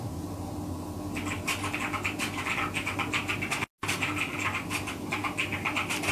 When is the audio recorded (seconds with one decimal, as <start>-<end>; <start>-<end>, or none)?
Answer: 0.0-6.1